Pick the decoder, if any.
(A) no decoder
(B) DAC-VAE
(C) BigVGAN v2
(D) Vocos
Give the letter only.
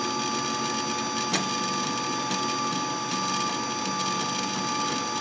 A